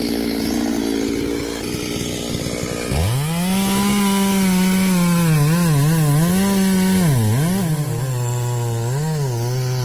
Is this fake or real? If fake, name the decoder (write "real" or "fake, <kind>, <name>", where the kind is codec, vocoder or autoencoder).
real